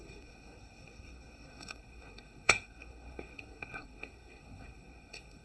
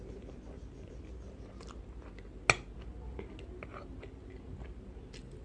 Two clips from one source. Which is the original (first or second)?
second